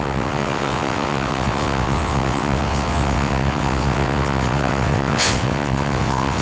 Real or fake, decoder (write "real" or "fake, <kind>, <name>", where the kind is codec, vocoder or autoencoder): fake, vocoder, WaveNeXt